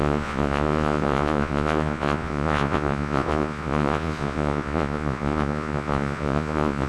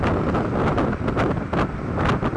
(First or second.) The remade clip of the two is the first